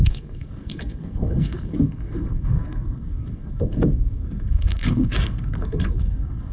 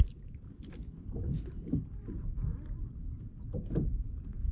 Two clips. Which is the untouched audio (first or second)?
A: second